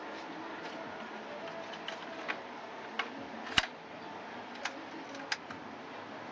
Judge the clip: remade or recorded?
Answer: recorded